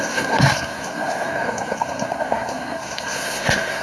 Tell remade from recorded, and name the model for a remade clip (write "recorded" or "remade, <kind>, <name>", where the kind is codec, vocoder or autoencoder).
remade, codec, SNAC